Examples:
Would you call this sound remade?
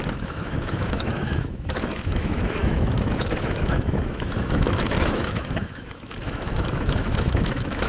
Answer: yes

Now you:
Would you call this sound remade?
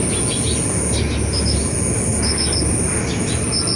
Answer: no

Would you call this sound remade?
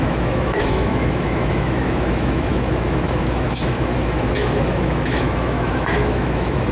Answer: yes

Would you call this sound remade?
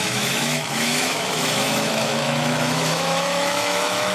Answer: yes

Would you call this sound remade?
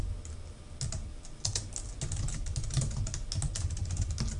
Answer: no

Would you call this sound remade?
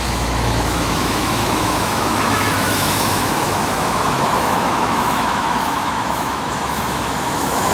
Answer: yes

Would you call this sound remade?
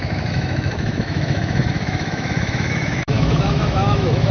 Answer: yes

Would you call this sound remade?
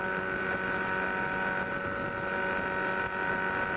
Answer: no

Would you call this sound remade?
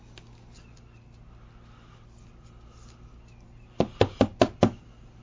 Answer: no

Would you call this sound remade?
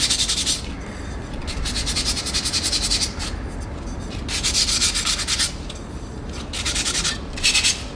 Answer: no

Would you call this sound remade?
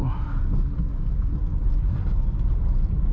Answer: no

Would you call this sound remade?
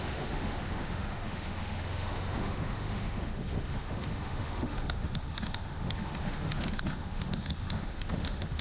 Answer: yes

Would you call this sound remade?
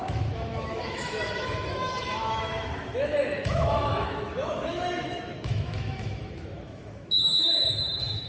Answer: yes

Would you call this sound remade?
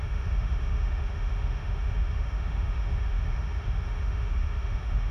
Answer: yes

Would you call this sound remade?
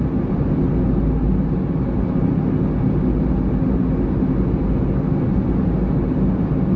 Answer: no